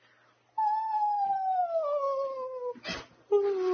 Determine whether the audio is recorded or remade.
recorded